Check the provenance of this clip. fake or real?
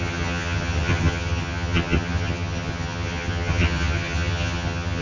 fake